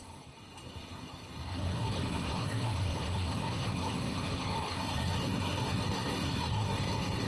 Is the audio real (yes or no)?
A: no